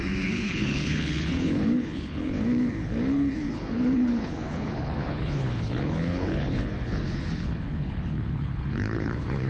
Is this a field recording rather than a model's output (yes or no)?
no